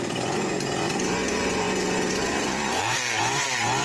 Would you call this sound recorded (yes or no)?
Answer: no